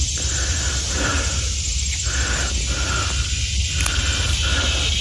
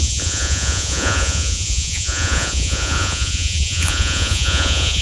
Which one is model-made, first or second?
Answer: second